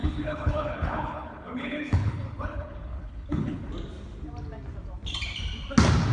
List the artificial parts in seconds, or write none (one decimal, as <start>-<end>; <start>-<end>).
0.0-3.7